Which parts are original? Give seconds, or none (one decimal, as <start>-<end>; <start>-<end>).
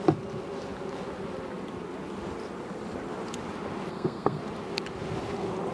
0.0-3.9; 4.4-5.7